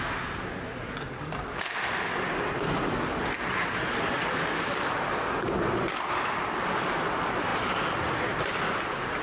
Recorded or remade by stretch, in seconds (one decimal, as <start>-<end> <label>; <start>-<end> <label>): 0.0-9.2 recorded